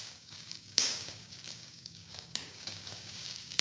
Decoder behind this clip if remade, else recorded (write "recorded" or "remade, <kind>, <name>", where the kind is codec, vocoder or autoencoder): remade, codec, DAC